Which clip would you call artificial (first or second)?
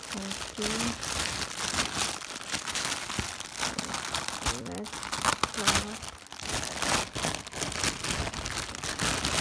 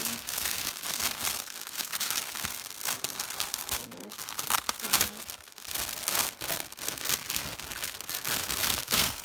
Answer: second